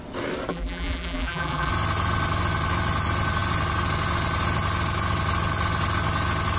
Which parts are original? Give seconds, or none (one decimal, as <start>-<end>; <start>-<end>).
0.0-0.5; 1.7-6.6